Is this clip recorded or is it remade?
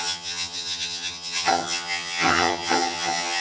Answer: remade